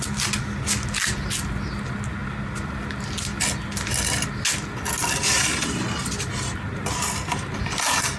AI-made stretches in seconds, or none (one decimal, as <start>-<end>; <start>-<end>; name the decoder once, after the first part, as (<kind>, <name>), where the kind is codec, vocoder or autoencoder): none